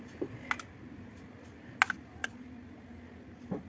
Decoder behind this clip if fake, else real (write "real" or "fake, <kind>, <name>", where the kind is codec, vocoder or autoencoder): real